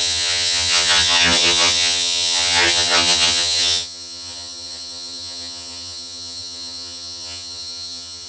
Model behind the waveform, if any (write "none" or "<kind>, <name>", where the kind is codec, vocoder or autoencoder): vocoder, HiFi-GAN